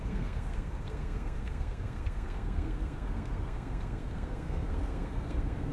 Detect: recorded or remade remade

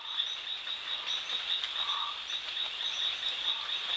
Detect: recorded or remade recorded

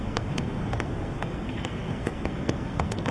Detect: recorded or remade remade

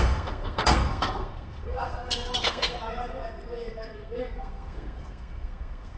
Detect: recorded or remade remade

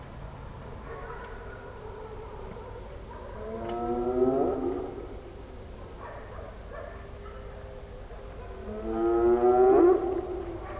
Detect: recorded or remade recorded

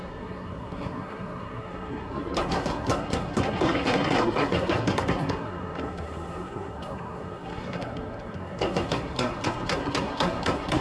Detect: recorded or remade remade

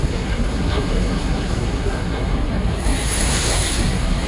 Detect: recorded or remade remade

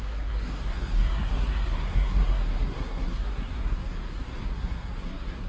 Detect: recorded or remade remade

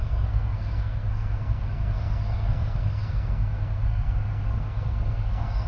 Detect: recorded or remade remade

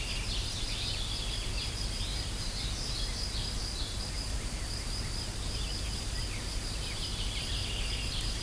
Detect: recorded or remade recorded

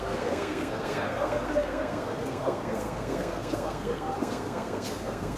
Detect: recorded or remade remade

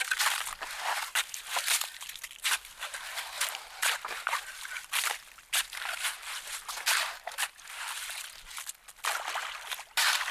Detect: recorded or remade recorded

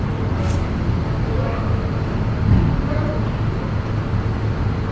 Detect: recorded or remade recorded